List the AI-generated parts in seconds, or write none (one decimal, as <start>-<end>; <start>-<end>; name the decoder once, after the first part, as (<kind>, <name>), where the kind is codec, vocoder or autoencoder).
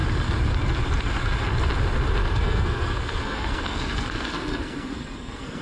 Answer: 2.2-5.6 (codec, SNAC)